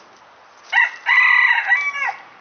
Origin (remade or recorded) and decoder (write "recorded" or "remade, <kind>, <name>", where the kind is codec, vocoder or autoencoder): recorded